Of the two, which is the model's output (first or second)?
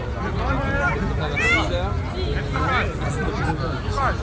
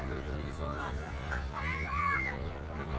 second